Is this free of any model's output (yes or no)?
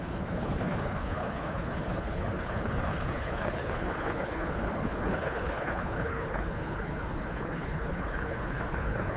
no